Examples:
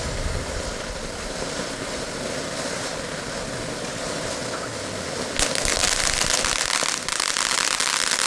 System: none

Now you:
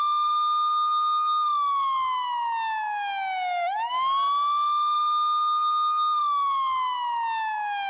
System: none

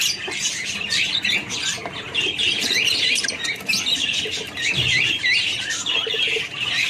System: vocoder, BigVGAN v2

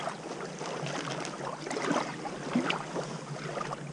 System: none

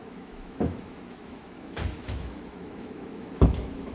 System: autoencoder, DAC-VAE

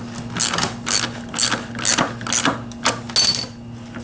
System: none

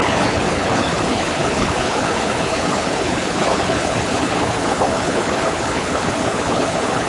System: codec, HILCodec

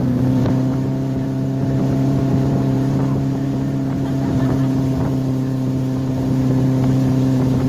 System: vocoder, BigVGAN v2